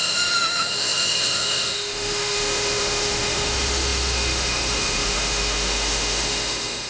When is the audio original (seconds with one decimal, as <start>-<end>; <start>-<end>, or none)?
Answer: none